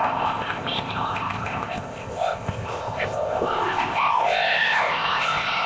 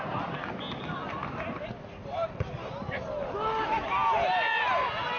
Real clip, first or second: second